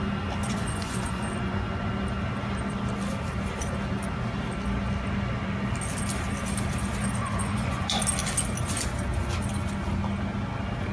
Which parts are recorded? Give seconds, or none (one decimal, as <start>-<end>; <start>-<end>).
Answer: 0.0-0.4; 1.9-7.2; 8.0-10.9